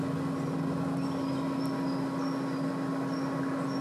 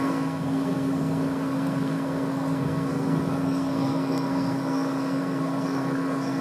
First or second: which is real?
first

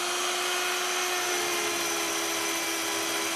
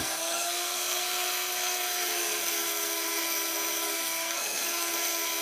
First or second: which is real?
first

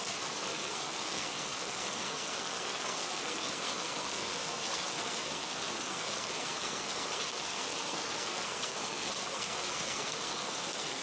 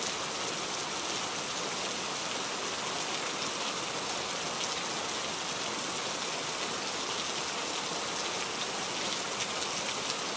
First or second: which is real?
second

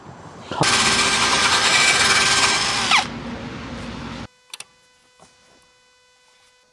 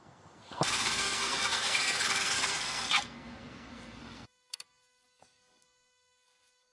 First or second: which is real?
first